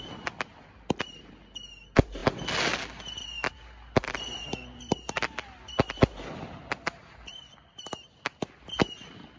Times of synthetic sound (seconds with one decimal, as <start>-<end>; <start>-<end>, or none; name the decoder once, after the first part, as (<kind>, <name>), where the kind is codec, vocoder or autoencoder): none

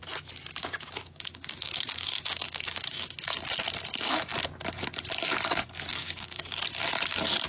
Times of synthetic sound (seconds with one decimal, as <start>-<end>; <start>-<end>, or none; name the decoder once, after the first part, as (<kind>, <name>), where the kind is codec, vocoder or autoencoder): 0.6-3.1 (codec, DAC); 5.9-6.6

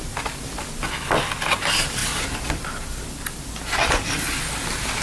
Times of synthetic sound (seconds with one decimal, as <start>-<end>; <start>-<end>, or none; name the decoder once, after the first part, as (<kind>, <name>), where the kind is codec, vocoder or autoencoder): none

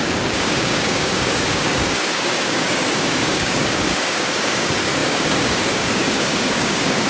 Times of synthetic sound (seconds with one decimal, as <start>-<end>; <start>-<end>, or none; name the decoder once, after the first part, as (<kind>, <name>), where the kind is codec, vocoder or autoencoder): 0.0-7.1 (codec, DAC)

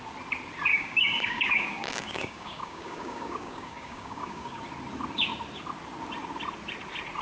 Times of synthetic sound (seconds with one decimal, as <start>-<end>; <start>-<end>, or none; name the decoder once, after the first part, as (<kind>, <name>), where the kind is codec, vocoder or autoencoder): 0.7-4.6 (codec, DAC)

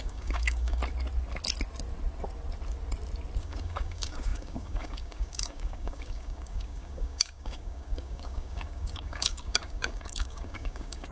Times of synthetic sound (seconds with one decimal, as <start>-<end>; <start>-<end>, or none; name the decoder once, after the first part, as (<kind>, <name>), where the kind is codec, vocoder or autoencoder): 0.0-0.8 (codec, DAC); 3.4-11.1

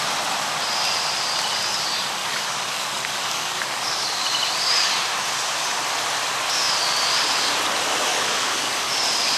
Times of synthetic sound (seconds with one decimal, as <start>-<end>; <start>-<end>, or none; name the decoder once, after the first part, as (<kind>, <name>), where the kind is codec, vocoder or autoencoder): 2.2-4.2 (codec, DAC); 8.1-8.9